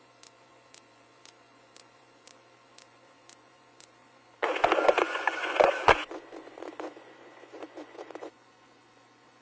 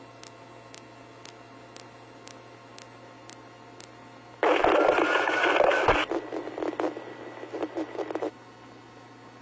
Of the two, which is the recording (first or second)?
second